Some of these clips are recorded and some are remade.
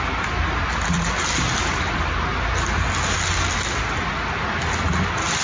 recorded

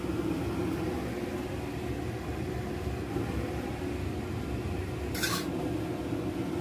recorded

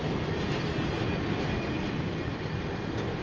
recorded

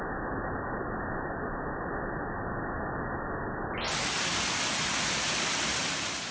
recorded